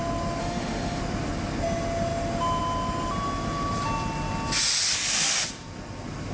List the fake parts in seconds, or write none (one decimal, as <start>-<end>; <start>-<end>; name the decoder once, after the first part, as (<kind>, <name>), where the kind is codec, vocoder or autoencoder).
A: 0.4-1.0 (autoencoder, DAC-VAE)